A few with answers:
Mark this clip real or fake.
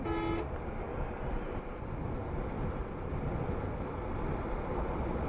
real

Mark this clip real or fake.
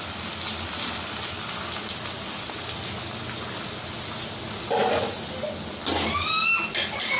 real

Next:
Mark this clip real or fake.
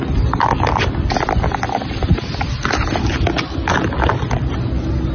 real